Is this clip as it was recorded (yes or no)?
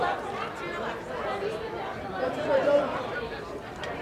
yes